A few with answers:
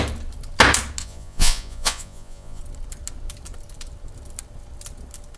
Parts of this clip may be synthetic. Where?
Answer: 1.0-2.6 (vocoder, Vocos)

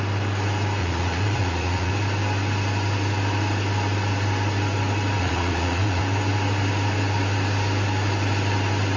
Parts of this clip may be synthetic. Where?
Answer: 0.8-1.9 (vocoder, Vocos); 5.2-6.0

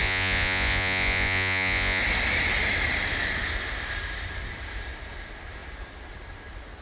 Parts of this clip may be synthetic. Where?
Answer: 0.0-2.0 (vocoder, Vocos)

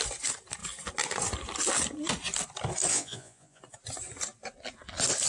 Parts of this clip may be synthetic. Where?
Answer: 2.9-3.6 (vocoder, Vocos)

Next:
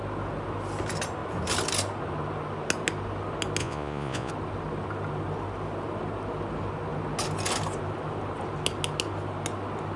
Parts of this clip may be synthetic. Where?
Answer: 3.6-4.3 (vocoder, Vocos)

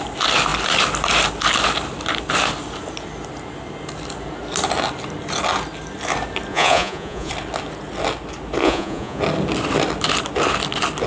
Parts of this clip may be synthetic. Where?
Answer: 6.5-7.3 (vocoder, Vocos); 8.6-9.2

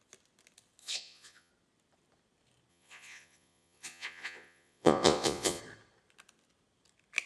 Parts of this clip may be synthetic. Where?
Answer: 0.8-1.5 (vocoder, Vocos); 2.7-5.6

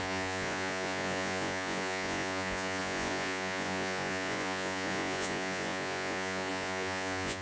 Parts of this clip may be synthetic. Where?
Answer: 0.0-7.4 (vocoder, Vocos)